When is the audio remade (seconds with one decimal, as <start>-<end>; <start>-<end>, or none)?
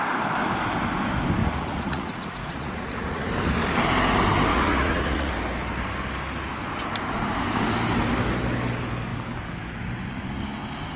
1.4-3.3; 4.5-5.3